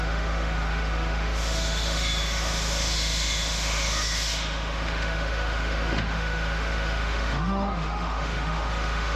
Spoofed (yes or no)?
yes